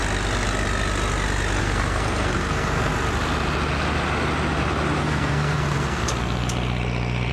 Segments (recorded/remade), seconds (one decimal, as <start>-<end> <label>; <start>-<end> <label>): 0.0-1.6 recorded; 1.6-2.9 remade; 2.9-5.0 recorded; 5.0-6.0 remade; 6.0-7.3 recorded